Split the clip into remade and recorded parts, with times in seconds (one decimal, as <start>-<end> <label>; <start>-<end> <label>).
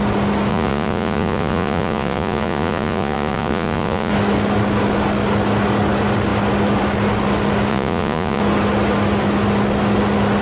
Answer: 0.0-0.5 recorded; 0.5-4.1 remade; 4.1-7.7 recorded; 7.7-8.4 remade; 8.4-10.4 recorded